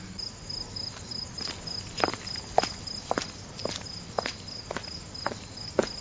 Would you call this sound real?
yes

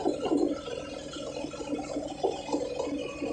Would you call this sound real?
yes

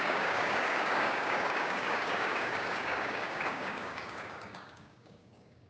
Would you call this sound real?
no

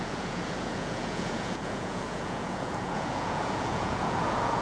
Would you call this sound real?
no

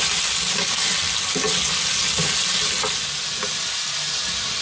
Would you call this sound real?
yes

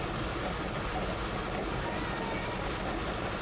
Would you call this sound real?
yes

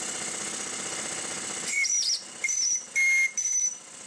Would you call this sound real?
yes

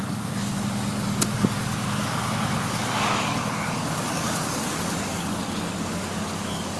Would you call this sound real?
no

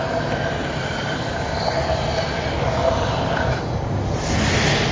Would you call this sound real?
yes